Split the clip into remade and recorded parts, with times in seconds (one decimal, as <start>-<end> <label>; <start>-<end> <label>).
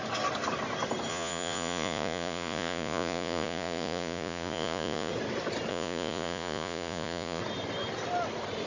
0.0-1.1 recorded; 1.1-5.1 remade; 5.1-5.7 recorded; 5.7-7.4 remade; 7.4-8.7 recorded